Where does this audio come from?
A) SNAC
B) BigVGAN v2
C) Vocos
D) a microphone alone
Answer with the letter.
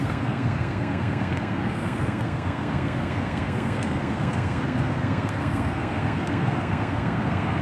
A